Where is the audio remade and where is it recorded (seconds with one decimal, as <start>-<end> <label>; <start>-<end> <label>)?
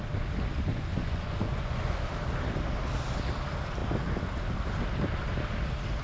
0.0-0.7 recorded; 0.7-2.0 remade; 2.0-6.0 recorded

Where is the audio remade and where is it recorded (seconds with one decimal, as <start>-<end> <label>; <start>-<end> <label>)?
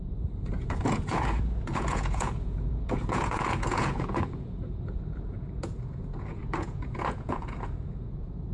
0.0-8.5 remade